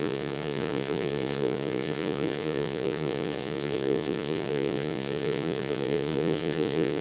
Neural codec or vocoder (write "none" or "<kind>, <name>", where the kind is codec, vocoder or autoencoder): vocoder, Vocos